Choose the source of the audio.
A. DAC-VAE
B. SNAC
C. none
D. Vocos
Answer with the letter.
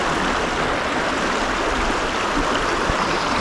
C